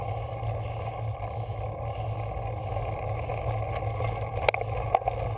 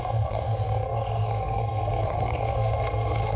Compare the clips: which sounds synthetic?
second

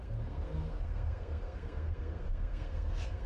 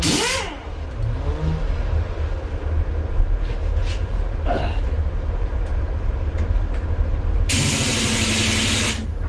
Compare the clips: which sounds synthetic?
first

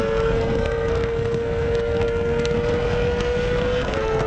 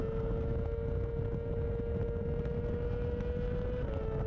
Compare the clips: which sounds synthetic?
first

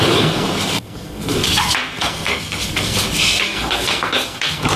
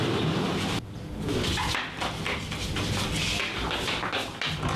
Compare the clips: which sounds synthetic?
first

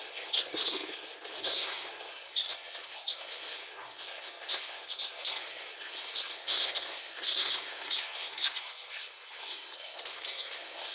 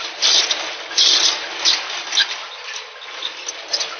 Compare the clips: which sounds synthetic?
first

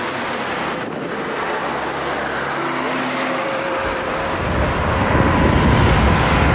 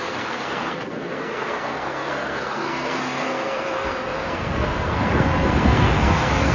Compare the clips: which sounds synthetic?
second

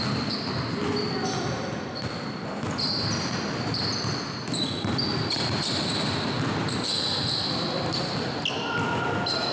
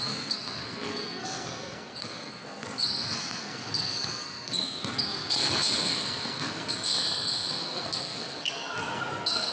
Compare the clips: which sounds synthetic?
second